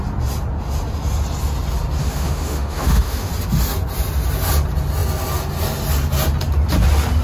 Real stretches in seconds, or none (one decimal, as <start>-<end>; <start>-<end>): 0.0-2.0; 3.3-7.2